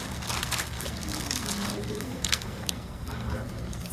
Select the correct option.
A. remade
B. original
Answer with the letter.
A